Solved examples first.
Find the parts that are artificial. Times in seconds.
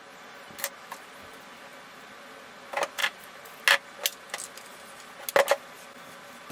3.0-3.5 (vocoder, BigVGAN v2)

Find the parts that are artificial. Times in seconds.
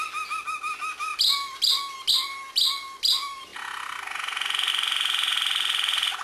none